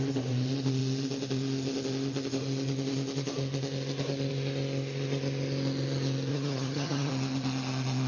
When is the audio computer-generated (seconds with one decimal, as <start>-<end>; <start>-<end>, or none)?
6.3-7.1